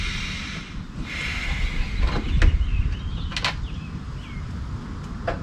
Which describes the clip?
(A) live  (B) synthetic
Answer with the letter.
A